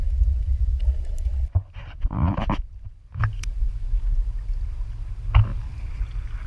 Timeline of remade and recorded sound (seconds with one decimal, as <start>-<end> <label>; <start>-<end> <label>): 0.0-5.5 recorded; 5.5-6.0 remade; 6.0-6.5 recorded